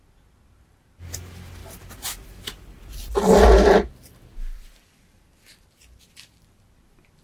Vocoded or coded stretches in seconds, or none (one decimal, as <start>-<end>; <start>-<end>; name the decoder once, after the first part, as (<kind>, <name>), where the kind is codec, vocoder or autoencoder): 1.6-5.7 (vocoder, BigVGAN v2)